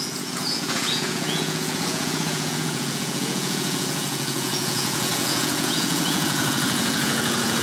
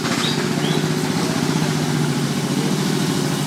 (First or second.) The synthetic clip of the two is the first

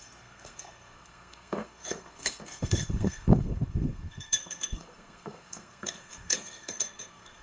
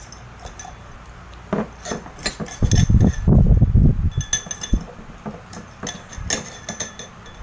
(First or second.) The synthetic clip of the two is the first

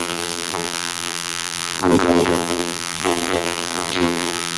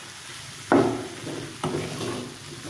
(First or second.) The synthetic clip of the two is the first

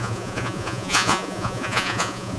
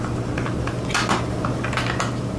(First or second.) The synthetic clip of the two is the first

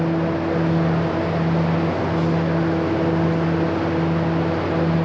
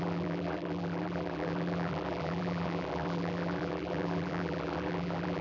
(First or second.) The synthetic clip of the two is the second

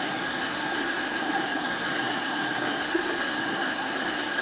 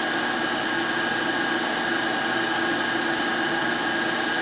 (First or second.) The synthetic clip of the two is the first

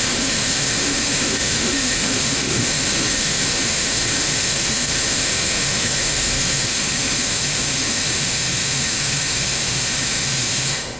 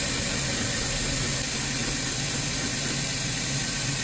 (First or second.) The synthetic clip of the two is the first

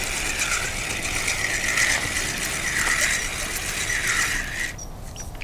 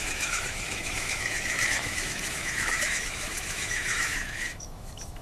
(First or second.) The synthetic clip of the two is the second